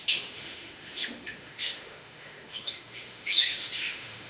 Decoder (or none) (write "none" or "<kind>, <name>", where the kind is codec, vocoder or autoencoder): autoencoder, DAC-VAE